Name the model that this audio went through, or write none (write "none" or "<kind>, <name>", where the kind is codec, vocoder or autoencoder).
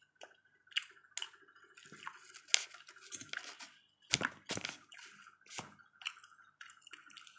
none